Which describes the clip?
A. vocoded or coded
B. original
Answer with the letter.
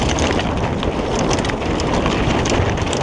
B